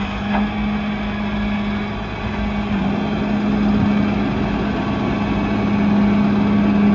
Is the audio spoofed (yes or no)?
no